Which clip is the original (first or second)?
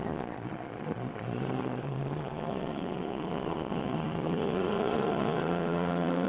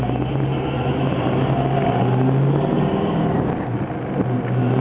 second